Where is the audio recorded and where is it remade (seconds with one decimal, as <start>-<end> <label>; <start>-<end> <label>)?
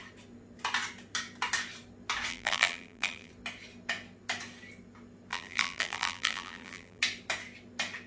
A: 0.0-2.3 recorded; 2.3-3.3 remade; 3.3-5.3 recorded; 5.3-7.0 remade; 7.0-8.1 recorded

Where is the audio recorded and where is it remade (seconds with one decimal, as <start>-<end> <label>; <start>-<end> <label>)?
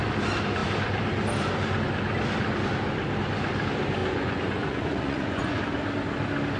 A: 0.0-4.0 recorded; 4.0-5.6 remade; 5.6-6.6 recorded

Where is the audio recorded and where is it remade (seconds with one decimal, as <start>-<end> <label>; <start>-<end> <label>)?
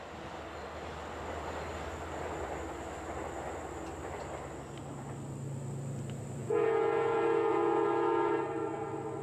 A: 0.0-6.4 recorded; 6.4-8.3 remade; 8.3-9.2 recorded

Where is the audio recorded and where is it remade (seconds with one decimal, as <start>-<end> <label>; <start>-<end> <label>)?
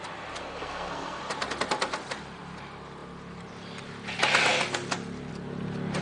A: 0.0-0.4 recorded; 0.4-1.2 remade; 1.2-6.0 recorded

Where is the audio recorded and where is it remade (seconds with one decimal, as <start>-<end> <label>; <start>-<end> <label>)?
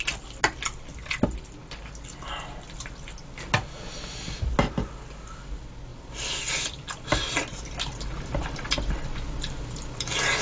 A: 0.0-5.9 recorded; 5.9-8.9 remade; 8.9-10.4 recorded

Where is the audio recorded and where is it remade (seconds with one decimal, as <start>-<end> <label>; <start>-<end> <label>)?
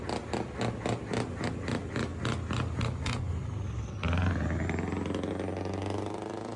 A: 0.0-6.6 recorded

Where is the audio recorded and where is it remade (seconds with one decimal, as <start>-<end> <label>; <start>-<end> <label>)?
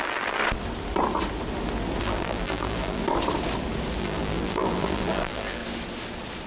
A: 0.0-0.4 remade; 0.4-2.0 recorded; 2.0-3.0 remade; 3.0-4.0 recorded; 4.0-5.6 remade; 5.6-6.5 recorded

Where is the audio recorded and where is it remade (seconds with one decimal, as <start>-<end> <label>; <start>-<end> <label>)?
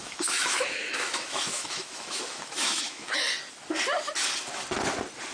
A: 0.0-3.2 remade; 3.2-5.3 recorded